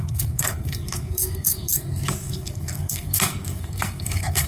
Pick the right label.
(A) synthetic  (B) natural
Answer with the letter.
A